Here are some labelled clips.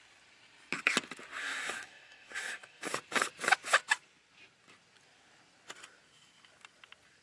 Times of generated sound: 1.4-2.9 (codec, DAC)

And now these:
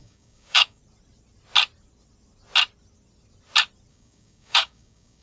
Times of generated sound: 0.0-0.8 (codec, DAC); 3.9-5.2

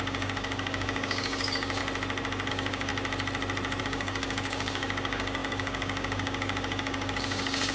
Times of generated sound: 0.0-1.8 (codec, DAC); 2.5-2.9; 3.8-7.7

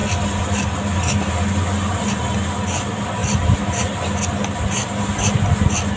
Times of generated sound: none

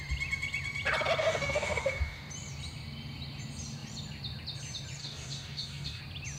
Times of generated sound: 1.2-2.3 (codec, DAC); 5.0-6.0

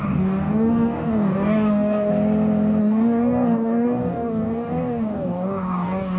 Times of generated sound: 0.0-2.1 (codec, DAC); 2.8-6.2

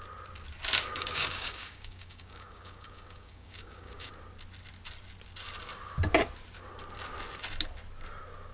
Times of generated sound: 0.9-4.1 (codec, DAC)

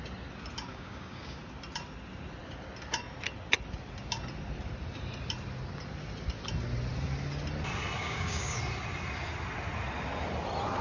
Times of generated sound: 0.7-1.4 (codec, DAC); 8.0-8.6